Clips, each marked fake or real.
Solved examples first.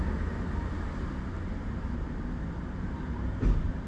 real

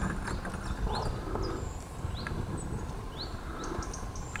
real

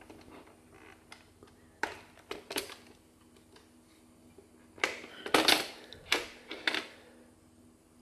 real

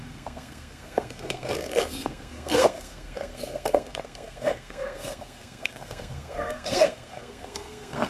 fake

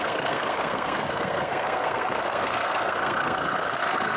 fake